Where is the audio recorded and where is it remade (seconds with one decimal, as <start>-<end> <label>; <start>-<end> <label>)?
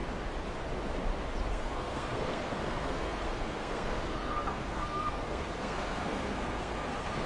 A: 0.0-1.5 recorded; 1.5-7.3 remade